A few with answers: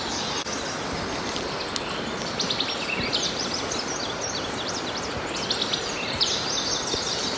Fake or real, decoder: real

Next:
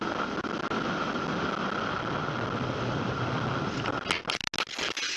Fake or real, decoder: real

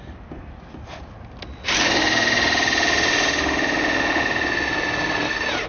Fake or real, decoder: real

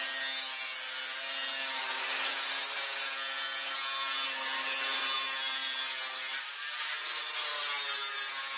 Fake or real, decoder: real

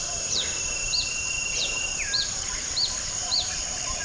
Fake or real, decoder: fake, vocoder, BigVGAN v2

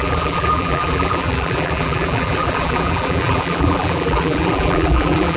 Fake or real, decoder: fake, vocoder, BigVGAN v2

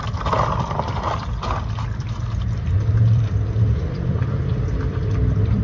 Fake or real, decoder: fake, vocoder, BigVGAN v2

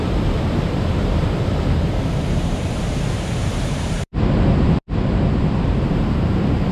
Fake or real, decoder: fake, vocoder, BigVGAN v2